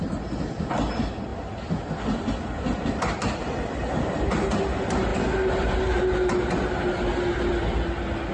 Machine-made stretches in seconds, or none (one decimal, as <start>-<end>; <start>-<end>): none